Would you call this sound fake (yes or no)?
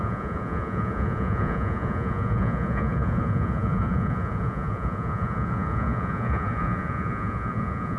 yes